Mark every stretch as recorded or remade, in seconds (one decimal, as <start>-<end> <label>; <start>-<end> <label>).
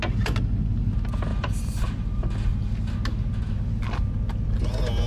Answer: 0.0-1.3 recorded; 1.3-2.9 remade; 2.9-5.1 recorded